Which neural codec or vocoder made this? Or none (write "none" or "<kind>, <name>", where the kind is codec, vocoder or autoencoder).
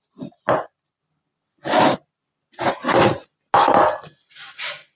none